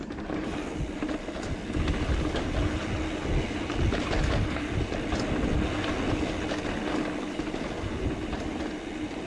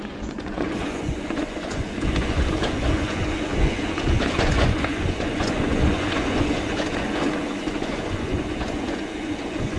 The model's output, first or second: second